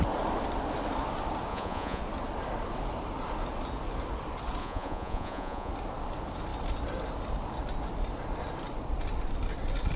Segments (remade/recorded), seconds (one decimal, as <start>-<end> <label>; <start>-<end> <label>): 0.0-1.5 recorded; 1.5-2.0 remade; 2.0-4.6 recorded; 4.6-5.7 remade; 5.7-10.0 recorded